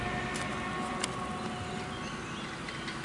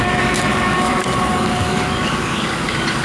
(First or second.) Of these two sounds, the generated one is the second